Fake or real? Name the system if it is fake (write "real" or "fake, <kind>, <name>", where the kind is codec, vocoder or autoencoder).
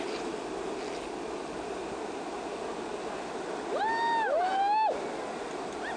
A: real